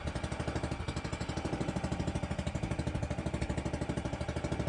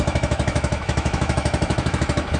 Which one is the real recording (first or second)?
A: first